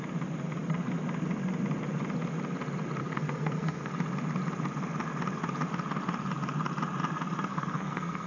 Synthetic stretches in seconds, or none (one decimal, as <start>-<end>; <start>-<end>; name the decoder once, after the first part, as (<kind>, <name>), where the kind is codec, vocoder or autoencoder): 3.0-3.9 (codec, SNAC); 7.5-8.3